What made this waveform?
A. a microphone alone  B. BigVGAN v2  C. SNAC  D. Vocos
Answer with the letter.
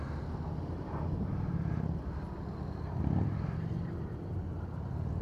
A